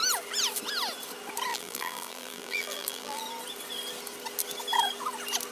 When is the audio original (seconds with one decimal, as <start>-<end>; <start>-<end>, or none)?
0.0-1.5; 3.2-5.5